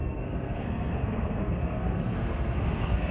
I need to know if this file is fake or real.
fake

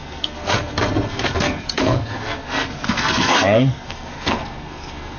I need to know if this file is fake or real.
fake